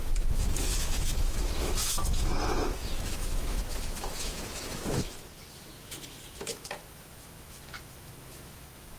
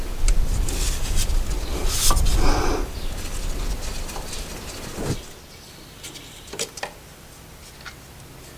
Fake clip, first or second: first